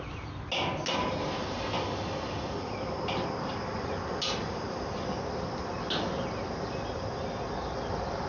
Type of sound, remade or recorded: recorded